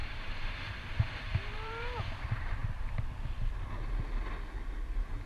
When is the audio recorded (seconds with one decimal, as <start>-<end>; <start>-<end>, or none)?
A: 2.6-5.3

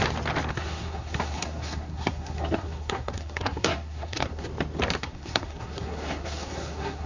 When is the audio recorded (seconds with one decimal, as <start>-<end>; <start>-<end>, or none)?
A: 0.0-0.5; 4.5-5.0

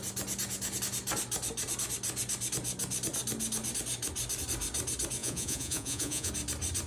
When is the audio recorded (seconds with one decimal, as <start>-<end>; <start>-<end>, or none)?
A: 0.0-5.2; 6.3-6.9

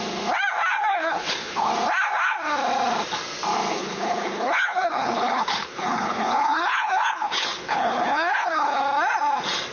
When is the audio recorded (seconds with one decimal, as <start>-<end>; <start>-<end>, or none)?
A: 0.0-0.9; 1.7-3.7; 8.8-9.7

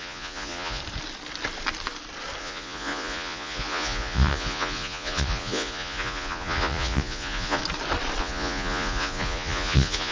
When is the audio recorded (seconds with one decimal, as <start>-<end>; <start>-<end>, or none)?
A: 0.8-2.4; 7.6-8.2

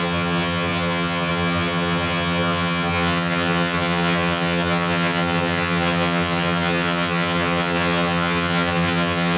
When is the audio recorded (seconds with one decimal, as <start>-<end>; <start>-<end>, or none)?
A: none

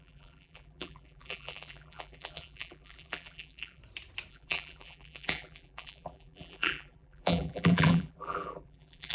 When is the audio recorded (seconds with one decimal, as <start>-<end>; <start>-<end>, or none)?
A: 3.8-4.3

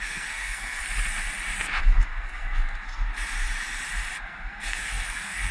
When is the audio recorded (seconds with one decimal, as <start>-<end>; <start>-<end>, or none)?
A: 0.8-1.8; 3.1-4.2